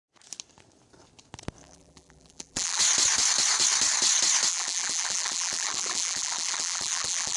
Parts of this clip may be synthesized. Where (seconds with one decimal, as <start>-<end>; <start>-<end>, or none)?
1.6-2.8; 4.5-7.4